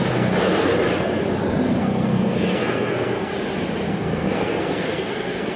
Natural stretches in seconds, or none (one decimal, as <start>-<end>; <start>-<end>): 0.7-1.6; 3.3-3.9